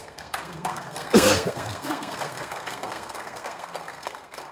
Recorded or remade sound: remade